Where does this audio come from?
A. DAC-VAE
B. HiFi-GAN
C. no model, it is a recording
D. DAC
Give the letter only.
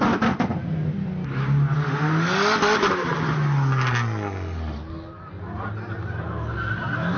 C